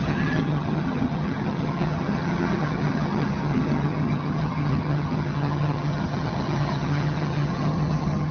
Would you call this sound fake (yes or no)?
yes